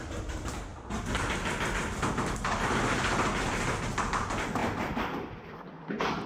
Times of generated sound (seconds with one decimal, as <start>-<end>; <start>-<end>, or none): none